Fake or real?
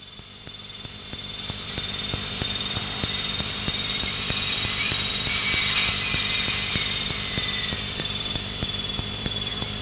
fake